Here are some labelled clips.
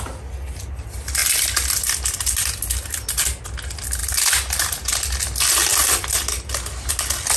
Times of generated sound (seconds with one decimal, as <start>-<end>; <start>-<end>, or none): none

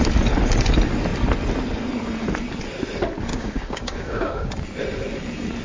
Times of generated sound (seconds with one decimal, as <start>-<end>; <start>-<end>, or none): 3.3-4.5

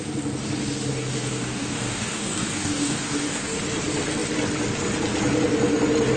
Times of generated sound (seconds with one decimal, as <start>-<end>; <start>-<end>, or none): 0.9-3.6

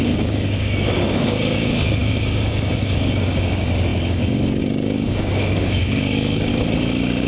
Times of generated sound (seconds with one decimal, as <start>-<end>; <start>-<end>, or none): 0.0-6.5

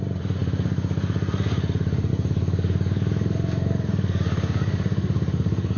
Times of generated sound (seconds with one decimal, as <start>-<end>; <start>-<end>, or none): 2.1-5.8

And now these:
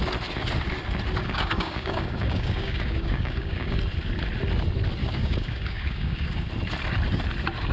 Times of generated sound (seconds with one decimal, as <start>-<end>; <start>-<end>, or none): 1.2-3.8; 5.0-6.5